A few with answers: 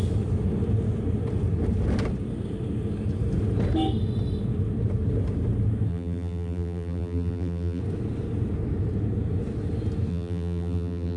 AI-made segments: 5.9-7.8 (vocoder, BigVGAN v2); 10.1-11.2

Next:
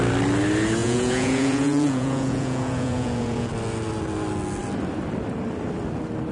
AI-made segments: 0.8-3.5 (vocoder, Vocos)

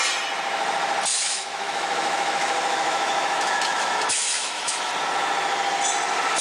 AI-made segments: 1.1-4.9 (autoencoder, DAC-VAE)

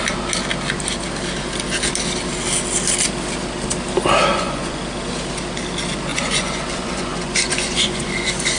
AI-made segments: 4.3-4.8 (vocoder, Vocos); 6.1-8.6

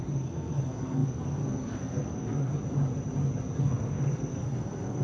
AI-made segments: 0.0-2.5 (codec, SNAC); 3.6-5.0

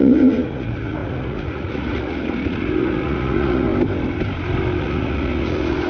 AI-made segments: 0.0-3.7 (vocoder, Vocos); 4.8-5.9

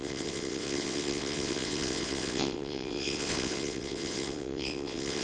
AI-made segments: 0.0-5.2 (vocoder, WaveNeXt)

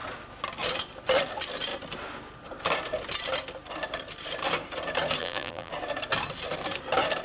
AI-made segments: 5.2-5.7 (vocoder, BigVGAN v2)